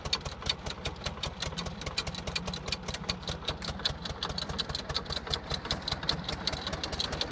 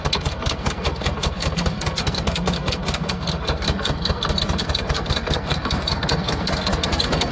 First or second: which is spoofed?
second